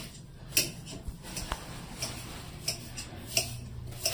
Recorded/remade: recorded